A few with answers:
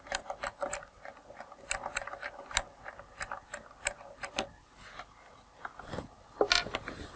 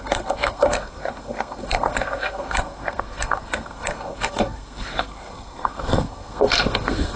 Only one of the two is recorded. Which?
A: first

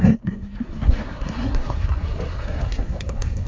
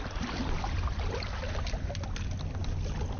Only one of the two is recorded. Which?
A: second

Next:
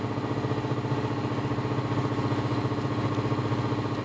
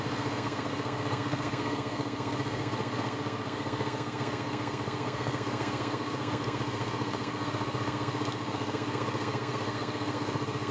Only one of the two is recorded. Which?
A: first